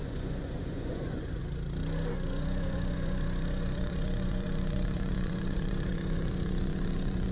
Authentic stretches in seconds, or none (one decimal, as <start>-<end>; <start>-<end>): 1.4-2.1